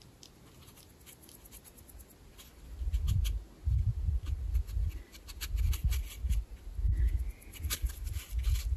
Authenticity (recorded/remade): recorded